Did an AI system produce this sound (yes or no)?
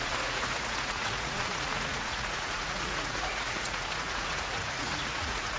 yes